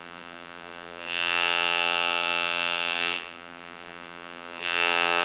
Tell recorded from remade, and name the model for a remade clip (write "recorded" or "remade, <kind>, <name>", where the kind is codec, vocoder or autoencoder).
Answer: remade, vocoder, BigVGAN v2